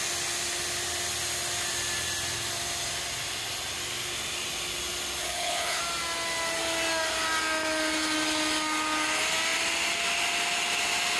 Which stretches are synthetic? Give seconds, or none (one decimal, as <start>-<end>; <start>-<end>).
5.2-5.8